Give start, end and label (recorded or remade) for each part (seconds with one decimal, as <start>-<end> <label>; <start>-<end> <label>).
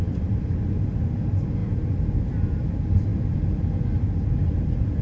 0.0-5.0 recorded